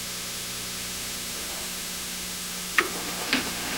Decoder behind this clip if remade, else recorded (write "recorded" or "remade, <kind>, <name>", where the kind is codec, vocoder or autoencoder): remade, autoencoder, DAC-VAE